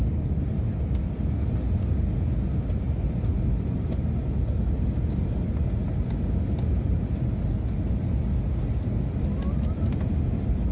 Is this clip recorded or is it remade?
recorded